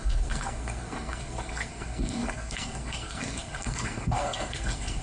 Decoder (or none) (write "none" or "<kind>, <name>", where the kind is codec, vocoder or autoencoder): codec, SNAC